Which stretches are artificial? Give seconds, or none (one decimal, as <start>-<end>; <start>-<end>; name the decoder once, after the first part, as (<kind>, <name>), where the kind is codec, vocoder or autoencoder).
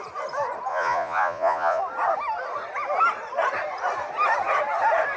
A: 0.7-1.8 (vocoder, Vocos)